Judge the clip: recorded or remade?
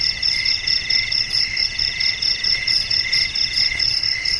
recorded